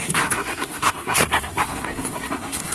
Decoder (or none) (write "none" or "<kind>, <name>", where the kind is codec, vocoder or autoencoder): codec, SNAC